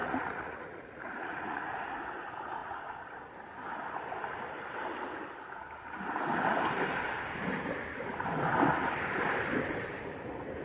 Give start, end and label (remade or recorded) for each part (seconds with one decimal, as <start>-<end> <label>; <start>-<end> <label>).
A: 0.0-2.0 remade; 2.0-10.6 recorded